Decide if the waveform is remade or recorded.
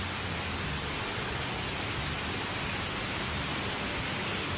recorded